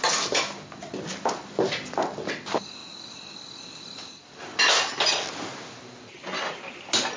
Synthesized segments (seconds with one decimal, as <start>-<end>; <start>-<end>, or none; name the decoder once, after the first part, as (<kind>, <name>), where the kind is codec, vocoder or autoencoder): none